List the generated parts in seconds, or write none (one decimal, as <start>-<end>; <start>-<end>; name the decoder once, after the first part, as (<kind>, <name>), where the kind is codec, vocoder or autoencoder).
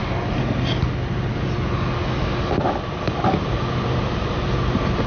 none